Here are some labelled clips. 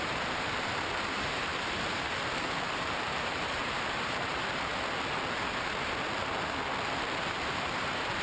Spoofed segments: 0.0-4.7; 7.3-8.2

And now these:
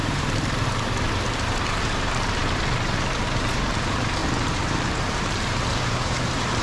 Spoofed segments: 0.0-6.6